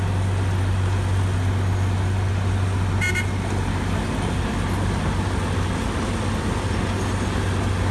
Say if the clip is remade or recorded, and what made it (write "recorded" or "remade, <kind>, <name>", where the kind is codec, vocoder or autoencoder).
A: recorded